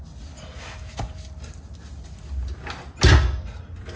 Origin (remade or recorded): recorded